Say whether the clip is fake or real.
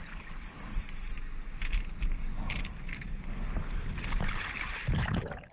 real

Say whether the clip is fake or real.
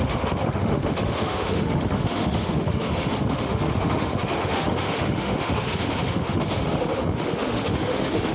fake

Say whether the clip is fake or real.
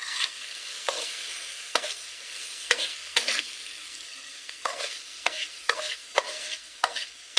fake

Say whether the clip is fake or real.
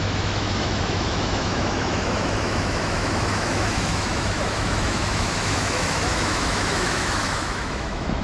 fake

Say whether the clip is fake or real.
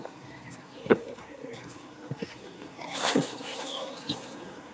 fake